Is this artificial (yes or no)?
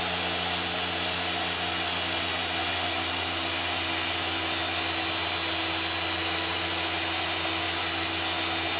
no